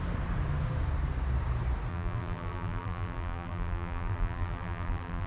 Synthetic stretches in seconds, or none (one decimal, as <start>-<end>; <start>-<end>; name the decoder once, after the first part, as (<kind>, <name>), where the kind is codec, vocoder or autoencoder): 1.9-5.3 (vocoder, BigVGAN v2)